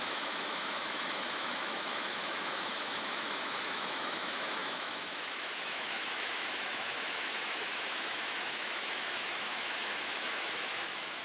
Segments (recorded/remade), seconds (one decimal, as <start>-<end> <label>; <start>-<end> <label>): 0.0-11.2 remade